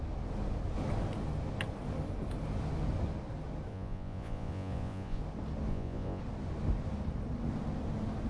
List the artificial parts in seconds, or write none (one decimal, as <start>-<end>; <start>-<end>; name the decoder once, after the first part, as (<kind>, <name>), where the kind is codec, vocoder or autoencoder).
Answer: 3.7-5.2 (vocoder, Vocos); 5.7-6.2